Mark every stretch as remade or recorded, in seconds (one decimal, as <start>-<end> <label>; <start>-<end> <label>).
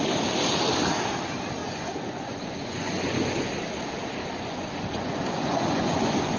0.0-1.6 recorded; 1.6-3.5 remade; 3.5-4.2 recorded; 4.2-6.4 remade